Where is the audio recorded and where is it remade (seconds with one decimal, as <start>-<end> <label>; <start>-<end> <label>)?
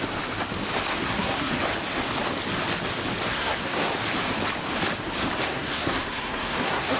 0.0-1.0 recorded; 1.0-1.5 remade; 1.5-3.3 recorded; 3.3-3.9 remade; 3.9-5.5 recorded; 5.5-7.0 remade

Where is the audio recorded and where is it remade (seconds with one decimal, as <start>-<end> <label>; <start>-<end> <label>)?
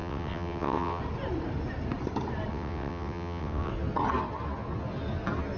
0.0-1.0 remade; 1.0-2.5 recorded; 2.5-3.7 remade; 3.7-5.6 recorded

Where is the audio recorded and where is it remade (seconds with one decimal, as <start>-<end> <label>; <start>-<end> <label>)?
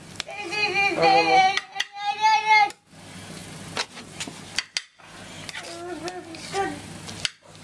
0.0-7.6 recorded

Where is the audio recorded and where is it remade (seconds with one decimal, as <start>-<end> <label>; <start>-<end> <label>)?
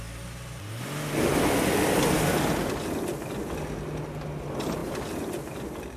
0.0-6.0 recorded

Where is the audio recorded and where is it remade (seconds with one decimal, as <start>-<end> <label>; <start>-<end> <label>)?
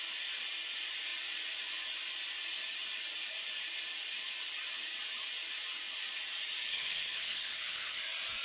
0.0-6.7 recorded; 6.7-8.0 remade; 8.0-8.4 recorded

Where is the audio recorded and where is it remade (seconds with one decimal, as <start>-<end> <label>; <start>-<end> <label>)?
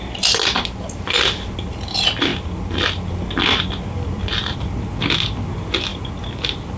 0.0-6.8 recorded